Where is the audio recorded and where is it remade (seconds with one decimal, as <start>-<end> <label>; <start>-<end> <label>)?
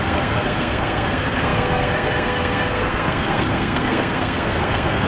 0.0-5.1 remade